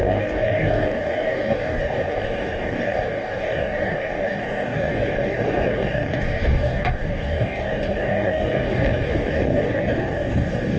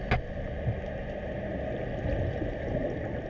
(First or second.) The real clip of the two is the second